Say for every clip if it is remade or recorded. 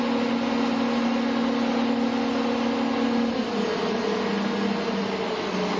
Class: recorded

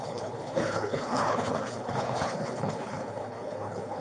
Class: remade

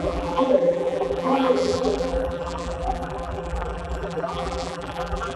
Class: remade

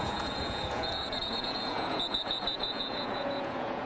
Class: remade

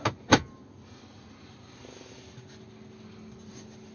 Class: recorded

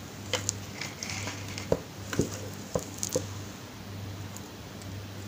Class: recorded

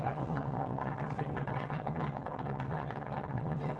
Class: remade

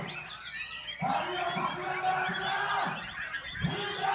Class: recorded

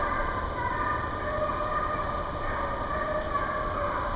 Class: recorded